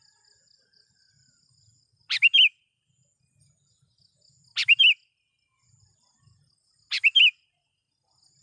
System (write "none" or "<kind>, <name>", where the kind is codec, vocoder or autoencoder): none